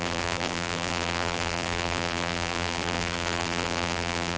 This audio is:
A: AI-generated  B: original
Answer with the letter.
A